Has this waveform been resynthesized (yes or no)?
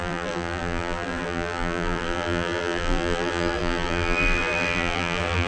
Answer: yes